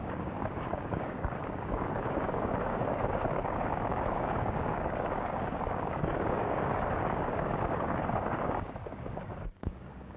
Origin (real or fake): fake